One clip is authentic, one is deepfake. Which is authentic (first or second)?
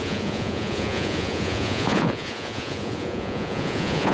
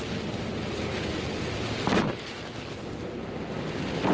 second